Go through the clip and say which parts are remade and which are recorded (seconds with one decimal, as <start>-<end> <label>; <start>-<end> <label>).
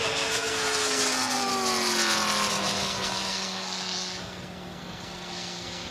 0.0-1.5 remade; 1.5-2.5 recorded; 2.5-5.9 remade